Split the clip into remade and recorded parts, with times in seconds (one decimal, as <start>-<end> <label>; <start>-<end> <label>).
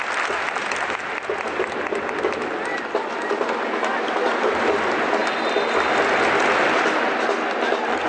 0.0-8.1 recorded